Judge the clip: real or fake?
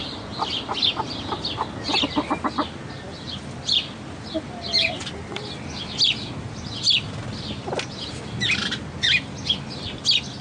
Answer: real